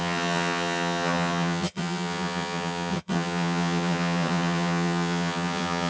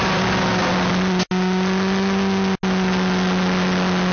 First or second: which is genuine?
second